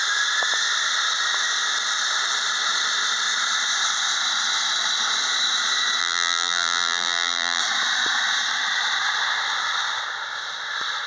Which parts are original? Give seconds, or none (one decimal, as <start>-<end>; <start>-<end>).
0.0-6.0; 7.6-11.1